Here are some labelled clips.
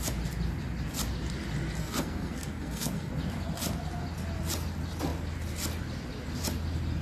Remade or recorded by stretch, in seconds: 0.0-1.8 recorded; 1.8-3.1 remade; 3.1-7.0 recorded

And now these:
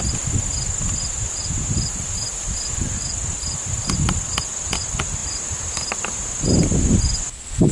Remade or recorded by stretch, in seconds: 0.0-7.7 recorded